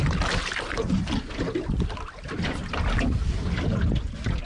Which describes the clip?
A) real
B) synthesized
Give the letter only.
A